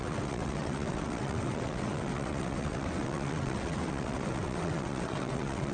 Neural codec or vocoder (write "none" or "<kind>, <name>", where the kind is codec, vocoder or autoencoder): vocoder, WaveNeXt